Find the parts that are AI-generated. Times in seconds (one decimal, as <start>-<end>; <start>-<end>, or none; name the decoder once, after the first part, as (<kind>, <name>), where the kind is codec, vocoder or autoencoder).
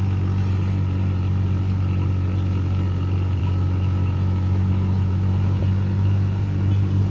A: 3.4-5.6 (autoencoder, DAC-VAE)